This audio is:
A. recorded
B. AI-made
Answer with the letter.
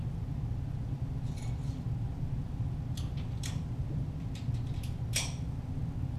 A